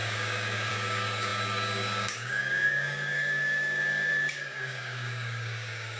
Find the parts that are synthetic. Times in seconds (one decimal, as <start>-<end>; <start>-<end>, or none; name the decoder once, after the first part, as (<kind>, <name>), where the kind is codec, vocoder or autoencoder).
0.0-6.0 (codec, DAC)